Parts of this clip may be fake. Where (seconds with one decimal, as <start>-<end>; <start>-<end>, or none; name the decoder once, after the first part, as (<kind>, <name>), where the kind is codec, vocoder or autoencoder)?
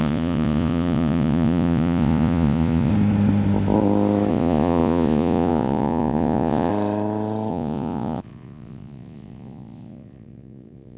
0.0-2.9 (vocoder, Vocos); 4.3-6.7; 7.5-11.0